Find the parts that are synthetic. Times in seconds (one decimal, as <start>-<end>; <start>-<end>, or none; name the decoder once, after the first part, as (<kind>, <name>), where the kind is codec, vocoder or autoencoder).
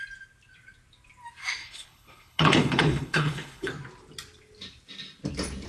1.6-3.7 (codec, HILCodec)